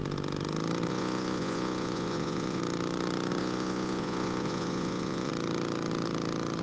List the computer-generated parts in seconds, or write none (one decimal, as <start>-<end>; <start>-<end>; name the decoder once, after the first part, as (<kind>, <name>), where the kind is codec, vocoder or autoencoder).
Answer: 0.9-2.6 (vocoder, Vocos); 3.4-5.3